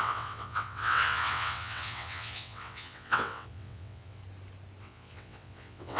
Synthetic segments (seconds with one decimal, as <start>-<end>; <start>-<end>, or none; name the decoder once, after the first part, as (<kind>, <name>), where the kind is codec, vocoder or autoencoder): 0.0-4.2 (vocoder, WaveNeXt); 4.8-6.0

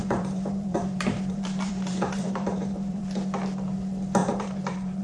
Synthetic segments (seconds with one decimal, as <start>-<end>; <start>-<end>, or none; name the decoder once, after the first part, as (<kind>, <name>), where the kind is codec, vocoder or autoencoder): 0.0-3.0 (vocoder, BigVGAN v2); 4.2-5.0

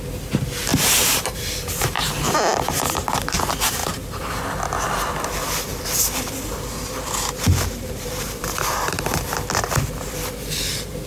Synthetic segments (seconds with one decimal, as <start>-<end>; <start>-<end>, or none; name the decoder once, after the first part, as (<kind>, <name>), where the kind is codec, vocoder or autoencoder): 0.7-3.4 (vocoder, BigVGAN v2); 3.8-4.4; 5.7-9.0